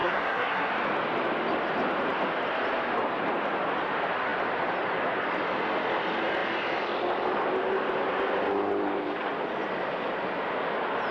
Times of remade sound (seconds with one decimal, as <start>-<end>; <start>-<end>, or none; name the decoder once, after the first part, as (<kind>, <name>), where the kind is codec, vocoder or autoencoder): 0.0-0.7 (codec, SNAC)